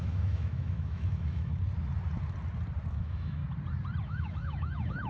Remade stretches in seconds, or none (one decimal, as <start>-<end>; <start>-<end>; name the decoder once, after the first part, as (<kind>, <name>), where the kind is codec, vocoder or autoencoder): 0.0-1.5 (autoencoder, DAC-VAE); 2.9-3.4; 4.0-5.1